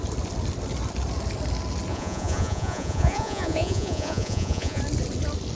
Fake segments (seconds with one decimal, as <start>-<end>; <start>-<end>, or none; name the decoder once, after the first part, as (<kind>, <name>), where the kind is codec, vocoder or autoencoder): 1.9-4.8 (vocoder, Vocos)